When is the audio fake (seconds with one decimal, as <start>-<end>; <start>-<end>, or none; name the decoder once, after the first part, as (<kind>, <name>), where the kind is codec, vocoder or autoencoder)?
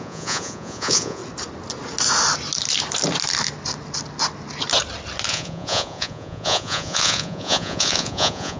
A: 0.0-1.2 (vocoder, Vocos); 5.3-8.6